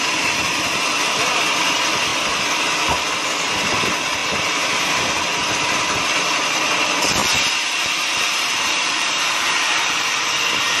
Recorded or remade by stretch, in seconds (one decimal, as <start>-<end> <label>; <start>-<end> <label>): 0.0-4.2 recorded; 4.2-5.2 remade; 5.2-7.2 recorded; 7.2-10.8 remade